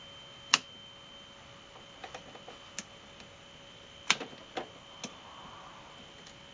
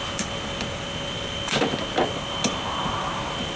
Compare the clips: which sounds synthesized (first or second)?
second